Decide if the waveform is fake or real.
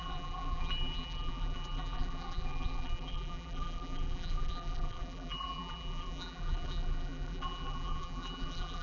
fake